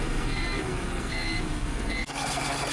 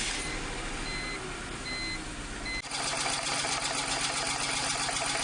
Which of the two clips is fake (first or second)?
first